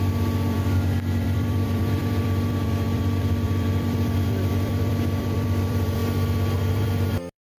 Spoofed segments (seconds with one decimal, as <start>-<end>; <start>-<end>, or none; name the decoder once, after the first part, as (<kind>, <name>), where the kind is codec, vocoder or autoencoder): 0.0-6.0 (vocoder, BigVGAN v2); 6.7-7.6